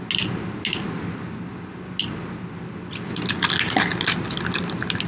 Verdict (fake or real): real